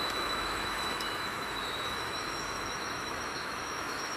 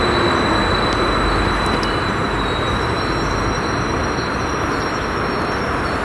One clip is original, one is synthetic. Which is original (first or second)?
second